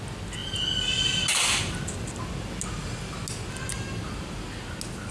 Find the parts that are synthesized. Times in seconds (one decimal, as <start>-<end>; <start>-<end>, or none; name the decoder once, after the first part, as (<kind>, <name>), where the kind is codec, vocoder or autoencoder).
none